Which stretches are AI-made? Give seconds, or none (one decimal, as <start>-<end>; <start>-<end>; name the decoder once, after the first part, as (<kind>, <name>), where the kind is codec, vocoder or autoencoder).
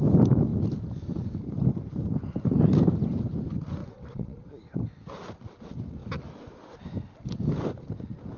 3.8-4.5 (vocoder, WaveNeXt)